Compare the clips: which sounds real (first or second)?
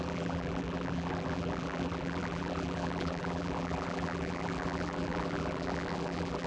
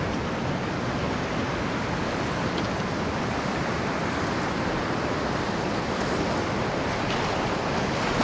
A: second